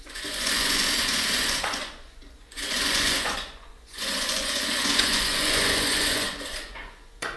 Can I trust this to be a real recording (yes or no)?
no